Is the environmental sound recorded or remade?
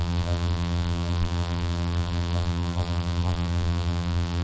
remade